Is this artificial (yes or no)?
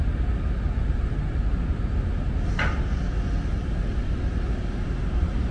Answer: no